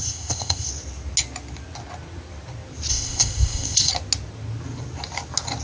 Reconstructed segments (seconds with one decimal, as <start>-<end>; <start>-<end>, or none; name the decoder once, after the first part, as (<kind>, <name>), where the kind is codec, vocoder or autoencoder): 0.0-0.7 (codec, ZipCodec); 2.9-3.9